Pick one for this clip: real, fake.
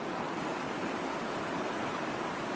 real